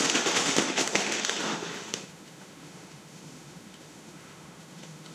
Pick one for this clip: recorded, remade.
remade